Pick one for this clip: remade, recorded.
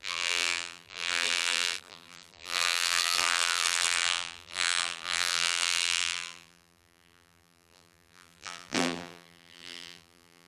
remade